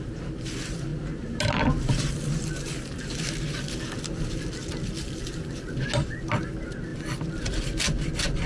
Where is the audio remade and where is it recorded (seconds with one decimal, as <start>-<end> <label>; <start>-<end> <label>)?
0.0-8.5 recorded